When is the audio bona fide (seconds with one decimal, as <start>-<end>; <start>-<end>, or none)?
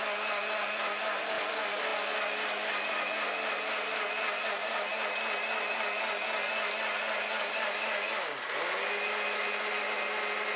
0.0-10.6